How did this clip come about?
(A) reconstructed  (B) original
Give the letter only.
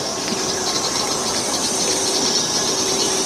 A